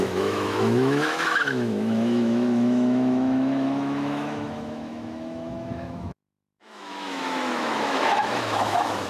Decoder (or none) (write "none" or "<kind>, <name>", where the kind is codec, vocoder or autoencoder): autoencoder, DAC-VAE